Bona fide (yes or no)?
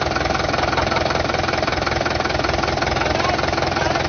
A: yes